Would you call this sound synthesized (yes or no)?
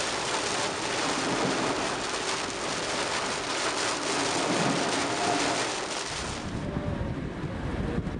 no